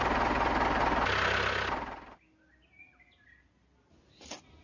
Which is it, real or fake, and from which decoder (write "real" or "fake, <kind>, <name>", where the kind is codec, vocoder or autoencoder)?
real